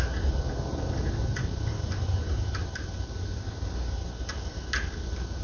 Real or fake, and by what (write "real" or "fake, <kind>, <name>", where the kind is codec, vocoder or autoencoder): real